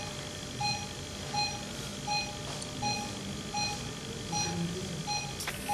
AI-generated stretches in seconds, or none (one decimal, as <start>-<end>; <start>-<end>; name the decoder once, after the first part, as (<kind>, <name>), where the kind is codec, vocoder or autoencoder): none